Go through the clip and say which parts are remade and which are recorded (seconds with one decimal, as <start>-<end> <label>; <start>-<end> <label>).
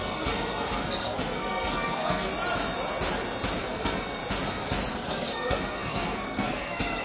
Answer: 0.0-2.3 remade; 2.3-3.6 recorded; 3.6-4.2 remade; 4.2-4.9 recorded; 4.9-7.0 remade